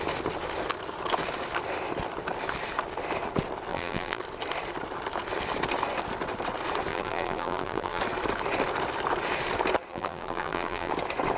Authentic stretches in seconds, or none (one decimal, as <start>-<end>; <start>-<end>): 0.0-3.7; 4.2-6.9; 8.0-9.9; 10.9-11.4